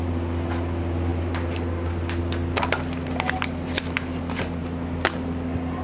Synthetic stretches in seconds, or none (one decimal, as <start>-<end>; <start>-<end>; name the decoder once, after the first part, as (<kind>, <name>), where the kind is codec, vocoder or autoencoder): none